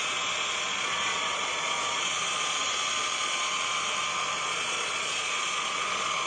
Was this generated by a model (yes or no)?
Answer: yes